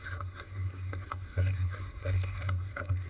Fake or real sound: fake